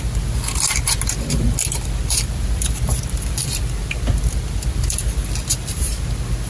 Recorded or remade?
recorded